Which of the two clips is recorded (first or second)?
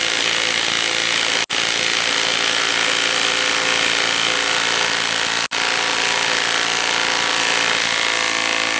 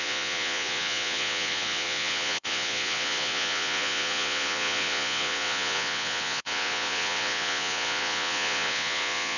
first